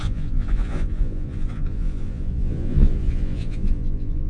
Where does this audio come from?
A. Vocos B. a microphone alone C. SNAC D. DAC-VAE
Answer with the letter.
A